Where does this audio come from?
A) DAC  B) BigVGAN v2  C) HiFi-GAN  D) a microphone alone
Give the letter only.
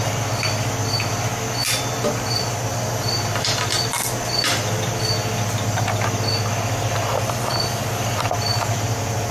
D